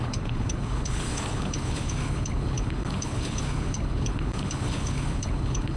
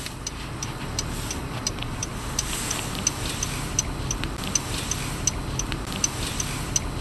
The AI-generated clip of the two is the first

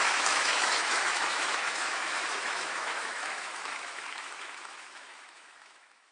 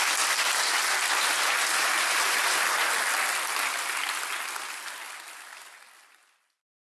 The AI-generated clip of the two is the first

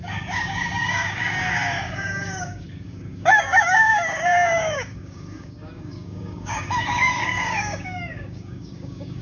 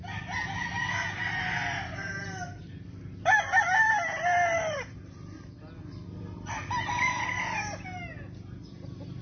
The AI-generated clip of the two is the first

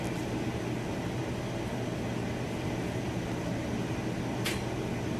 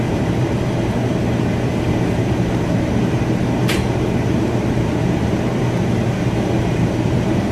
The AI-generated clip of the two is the second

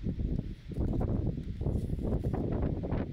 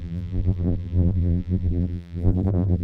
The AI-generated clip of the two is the second